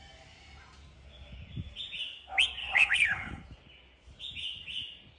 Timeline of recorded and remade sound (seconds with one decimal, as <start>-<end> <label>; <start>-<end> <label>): 0.0-2.6 recorded; 2.6-3.4 remade; 3.4-5.2 recorded